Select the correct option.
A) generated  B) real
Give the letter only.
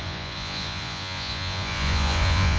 A